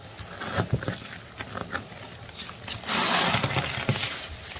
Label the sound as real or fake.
real